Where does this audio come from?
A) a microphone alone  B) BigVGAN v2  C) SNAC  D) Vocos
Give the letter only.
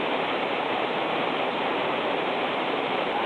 B